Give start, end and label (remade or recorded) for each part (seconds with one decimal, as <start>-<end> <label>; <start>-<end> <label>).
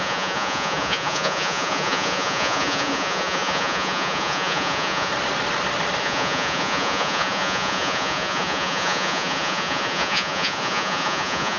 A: 0.0-5.1 remade; 5.1-6.0 recorded; 6.0-11.6 remade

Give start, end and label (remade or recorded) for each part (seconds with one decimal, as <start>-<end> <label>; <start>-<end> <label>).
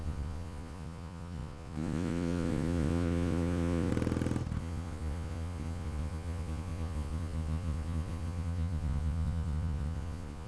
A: 0.0-3.9 remade; 3.9-4.6 recorded; 4.6-10.5 remade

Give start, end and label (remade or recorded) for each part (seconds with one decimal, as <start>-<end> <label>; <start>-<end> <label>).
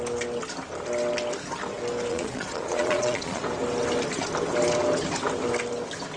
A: 0.0-2.1 recorded; 2.1-3.4 remade; 3.4-6.2 recorded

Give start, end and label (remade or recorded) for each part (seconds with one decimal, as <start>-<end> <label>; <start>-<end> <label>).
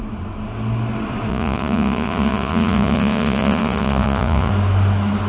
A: 0.0-1.3 recorded; 1.3-4.5 remade; 4.5-5.3 recorded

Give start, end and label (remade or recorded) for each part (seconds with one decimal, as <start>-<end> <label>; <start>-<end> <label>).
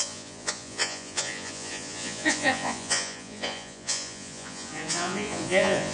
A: 0.0-5.9 remade